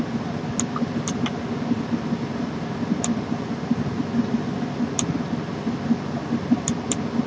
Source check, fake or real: real